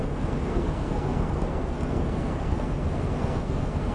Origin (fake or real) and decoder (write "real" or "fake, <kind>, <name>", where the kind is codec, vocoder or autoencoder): fake, codec, SNAC